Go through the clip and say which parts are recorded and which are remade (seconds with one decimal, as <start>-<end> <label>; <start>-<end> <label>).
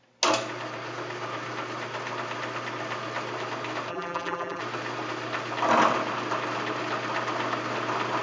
0.0-3.9 recorded; 3.9-4.6 remade; 4.6-8.2 recorded